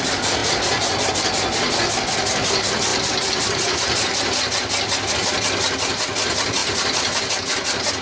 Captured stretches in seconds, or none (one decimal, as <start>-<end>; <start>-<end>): 0.0-8.0